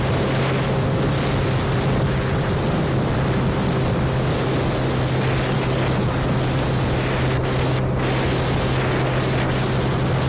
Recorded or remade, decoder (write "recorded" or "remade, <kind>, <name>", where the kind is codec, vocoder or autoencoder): recorded